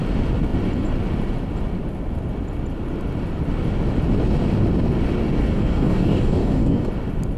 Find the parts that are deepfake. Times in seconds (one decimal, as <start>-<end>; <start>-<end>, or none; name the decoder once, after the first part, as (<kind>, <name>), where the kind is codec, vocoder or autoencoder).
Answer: 5.4-6.9 (codec, DAC)

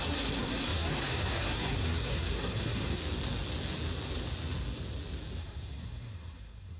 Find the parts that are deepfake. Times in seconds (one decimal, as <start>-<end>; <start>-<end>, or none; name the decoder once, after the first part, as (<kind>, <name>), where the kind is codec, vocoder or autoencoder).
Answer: 0.0-3.0 (codec, SNAC); 5.4-6.8

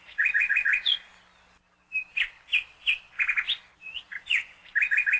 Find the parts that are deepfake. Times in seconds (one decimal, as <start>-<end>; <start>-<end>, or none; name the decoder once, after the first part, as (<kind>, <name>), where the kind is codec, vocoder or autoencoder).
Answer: 0.0-0.7 (vocoder, Vocos); 3.8-4.6

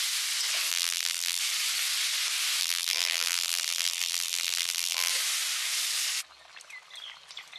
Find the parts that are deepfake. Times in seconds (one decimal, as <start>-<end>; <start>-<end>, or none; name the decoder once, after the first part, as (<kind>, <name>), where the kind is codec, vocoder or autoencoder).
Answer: 0.7-1.4 (vocoder, BigVGAN v2); 2.6-5.1

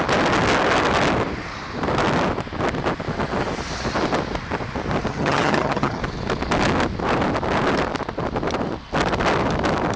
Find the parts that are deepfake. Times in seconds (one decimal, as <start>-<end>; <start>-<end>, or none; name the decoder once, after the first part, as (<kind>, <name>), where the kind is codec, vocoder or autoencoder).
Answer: 5.1-6.0 (vocoder, HiFi-GAN)

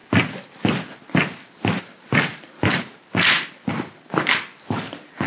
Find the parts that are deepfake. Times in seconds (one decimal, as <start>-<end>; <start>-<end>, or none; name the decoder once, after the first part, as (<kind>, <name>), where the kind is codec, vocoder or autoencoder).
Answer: none